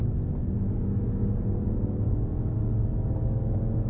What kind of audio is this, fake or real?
real